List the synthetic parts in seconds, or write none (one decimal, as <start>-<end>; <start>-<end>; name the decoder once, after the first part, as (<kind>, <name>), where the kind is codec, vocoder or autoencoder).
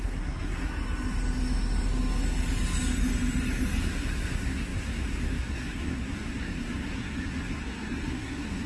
0.0-0.7 (codec, SNAC); 3.8-8.7